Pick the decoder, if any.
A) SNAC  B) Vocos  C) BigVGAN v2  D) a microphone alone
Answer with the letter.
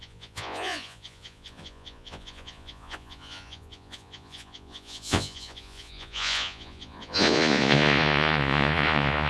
B